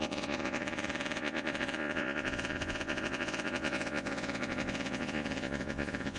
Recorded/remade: remade